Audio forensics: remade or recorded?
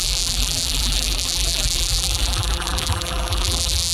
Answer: remade